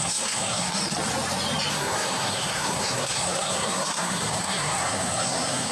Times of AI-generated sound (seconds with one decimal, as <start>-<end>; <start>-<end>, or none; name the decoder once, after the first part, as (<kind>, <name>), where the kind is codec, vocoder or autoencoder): 0.0-0.8 (codec, SNAC); 1.7-5.7